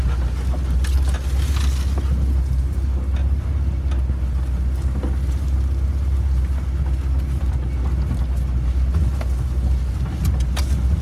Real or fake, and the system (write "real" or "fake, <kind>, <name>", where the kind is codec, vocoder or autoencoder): real